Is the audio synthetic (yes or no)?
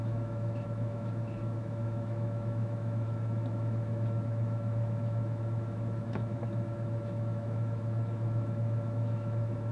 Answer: yes